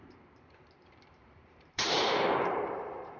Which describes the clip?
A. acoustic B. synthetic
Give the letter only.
B